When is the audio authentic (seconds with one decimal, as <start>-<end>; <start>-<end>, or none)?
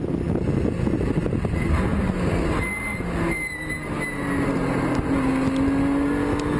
0.0-6.6